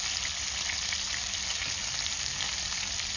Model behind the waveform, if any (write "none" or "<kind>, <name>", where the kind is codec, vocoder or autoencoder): none